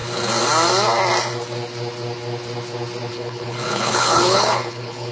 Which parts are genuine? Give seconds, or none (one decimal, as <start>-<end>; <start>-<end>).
0.0-3.1